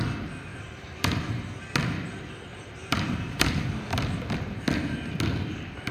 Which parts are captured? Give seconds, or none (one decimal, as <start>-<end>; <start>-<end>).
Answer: 0.0-0.5; 1.5-2.5; 3.6-5.9